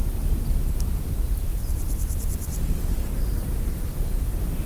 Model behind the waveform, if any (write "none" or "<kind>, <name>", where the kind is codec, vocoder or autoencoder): none